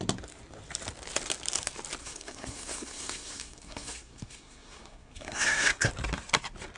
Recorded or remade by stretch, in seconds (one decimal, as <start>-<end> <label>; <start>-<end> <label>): 0.0-2.0 recorded; 2.0-5.9 remade; 5.9-6.8 recorded